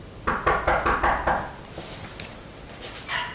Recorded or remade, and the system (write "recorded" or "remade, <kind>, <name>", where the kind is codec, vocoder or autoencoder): recorded